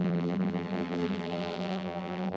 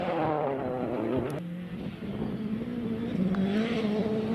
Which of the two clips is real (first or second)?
second